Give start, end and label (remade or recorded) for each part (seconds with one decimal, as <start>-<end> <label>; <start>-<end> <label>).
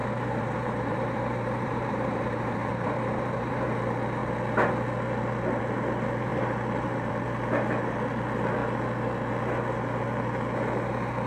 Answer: 0.0-3.7 remade; 3.7-11.3 recorded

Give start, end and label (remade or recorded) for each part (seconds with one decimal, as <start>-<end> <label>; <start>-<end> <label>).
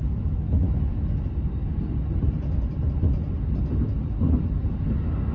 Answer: 0.0-1.2 remade; 1.2-5.3 recorded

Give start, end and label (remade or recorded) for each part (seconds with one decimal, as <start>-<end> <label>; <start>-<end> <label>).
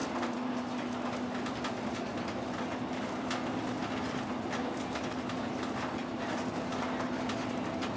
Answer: 0.0-0.5 remade; 0.5-8.0 recorded